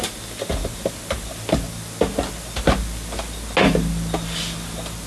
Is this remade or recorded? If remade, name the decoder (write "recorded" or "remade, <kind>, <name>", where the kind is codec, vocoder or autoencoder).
recorded